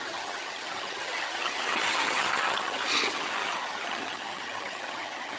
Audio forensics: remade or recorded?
remade